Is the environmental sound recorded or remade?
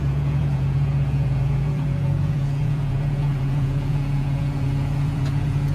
remade